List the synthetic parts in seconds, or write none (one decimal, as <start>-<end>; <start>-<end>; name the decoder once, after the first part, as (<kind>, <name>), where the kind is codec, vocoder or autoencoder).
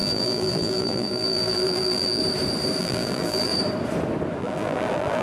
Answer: 0.0-2.2 (vocoder, BigVGAN v2); 2.8-3.5; 4.4-5.2